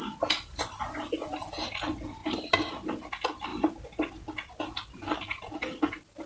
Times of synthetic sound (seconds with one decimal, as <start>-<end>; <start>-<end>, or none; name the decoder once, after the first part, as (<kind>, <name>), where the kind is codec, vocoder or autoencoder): none